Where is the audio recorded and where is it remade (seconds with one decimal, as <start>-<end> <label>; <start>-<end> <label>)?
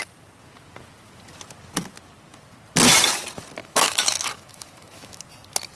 0.0-3.6 recorded; 3.6-5.2 remade; 5.2-5.8 recorded